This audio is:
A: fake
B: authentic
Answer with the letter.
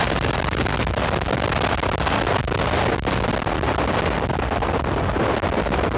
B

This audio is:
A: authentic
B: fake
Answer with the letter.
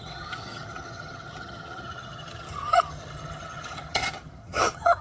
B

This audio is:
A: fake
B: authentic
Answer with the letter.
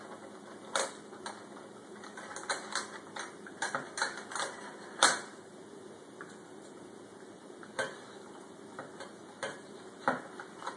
B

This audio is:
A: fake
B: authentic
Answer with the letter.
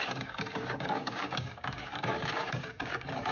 A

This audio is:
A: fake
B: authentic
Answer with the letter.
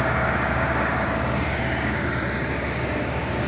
A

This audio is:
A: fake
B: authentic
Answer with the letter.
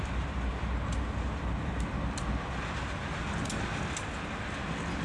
B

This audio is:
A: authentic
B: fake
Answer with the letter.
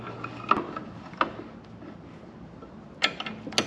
A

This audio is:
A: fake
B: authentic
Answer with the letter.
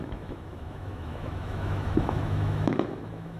A